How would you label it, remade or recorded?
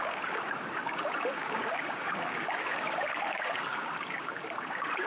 remade